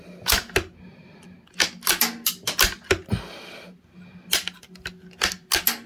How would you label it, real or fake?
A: real